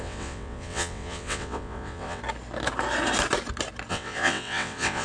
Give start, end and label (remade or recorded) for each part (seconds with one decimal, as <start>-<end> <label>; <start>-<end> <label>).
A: 0.0-2.2 remade; 2.2-3.9 recorded; 3.9-5.0 remade